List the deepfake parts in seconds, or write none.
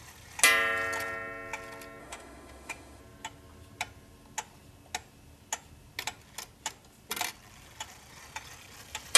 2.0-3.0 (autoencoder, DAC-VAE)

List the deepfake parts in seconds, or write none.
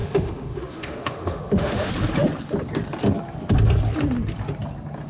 0.0-1.9 (autoencoder, DAC-VAE)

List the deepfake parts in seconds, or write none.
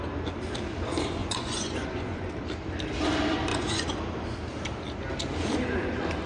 1.2-2.3 (vocoder, Vocos); 3.5-4.0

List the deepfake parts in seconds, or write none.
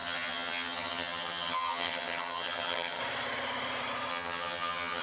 0.0-3.0 (vocoder, HiFi-GAN); 4.1-5.0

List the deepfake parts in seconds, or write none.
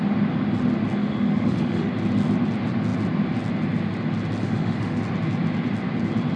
1.0-1.9 (autoencoder, DAC-VAE); 4.4-5.0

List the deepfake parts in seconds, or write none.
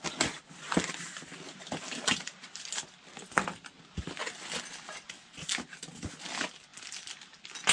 none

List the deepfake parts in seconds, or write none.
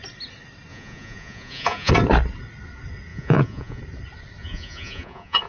0.7-1.9 (vocoder, Vocos); 3.1-3.8; 4.4-5.5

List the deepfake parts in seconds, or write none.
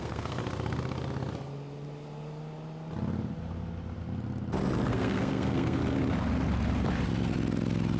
0.0-0.4 (codec, SNAC); 4.9-5.8